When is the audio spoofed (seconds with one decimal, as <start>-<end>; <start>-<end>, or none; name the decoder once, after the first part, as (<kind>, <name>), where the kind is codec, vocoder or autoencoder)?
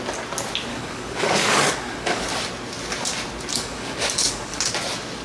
0.7-2.3 (codec, DAC); 3.5-4.6